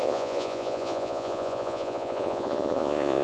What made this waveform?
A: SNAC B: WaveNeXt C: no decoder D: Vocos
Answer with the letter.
D